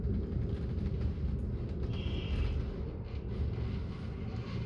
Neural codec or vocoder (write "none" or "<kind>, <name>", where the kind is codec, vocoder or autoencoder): none